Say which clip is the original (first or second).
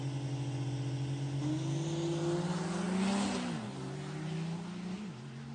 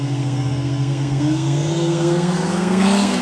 first